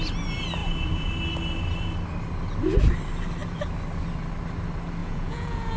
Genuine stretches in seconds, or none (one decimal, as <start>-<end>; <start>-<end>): 0.0-0.6; 1.1-5.0